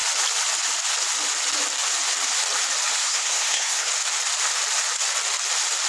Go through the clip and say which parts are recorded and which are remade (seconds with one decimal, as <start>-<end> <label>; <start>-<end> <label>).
0.0-3.0 recorded; 3.0-3.9 remade; 3.9-5.9 recorded